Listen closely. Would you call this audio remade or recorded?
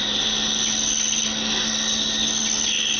recorded